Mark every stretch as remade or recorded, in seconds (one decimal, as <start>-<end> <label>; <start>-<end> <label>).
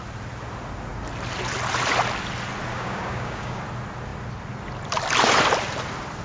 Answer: 0.0-2.7 recorded; 2.7-3.6 remade; 3.6-6.2 recorded